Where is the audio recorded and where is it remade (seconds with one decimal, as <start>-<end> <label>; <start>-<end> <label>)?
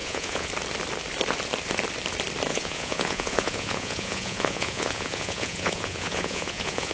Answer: 0.0-0.5 remade; 0.5-2.5 recorded; 2.5-6.9 remade